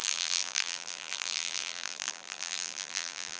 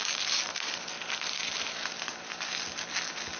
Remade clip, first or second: first